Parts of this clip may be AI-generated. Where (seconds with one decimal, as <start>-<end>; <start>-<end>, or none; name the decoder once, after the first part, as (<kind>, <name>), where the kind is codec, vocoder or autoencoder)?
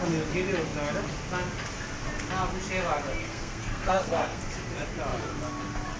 3.2-4.4 (codec, SNAC)